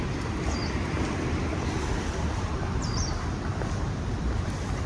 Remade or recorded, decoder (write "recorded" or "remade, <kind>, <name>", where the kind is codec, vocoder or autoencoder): remade, vocoder, BigVGAN v2